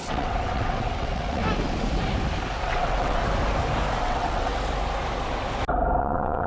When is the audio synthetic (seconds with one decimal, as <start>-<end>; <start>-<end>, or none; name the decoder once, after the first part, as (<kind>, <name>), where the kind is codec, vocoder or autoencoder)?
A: 0.0-1.4 (vocoder, WaveNeXt); 2.6-3.2; 4.0-4.5; 6.0-6.5